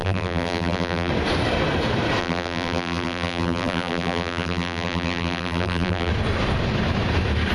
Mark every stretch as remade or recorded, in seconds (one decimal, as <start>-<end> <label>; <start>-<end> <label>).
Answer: 0.0-1.1 remade; 1.1-2.2 recorded; 2.2-6.1 remade; 6.1-7.5 recorded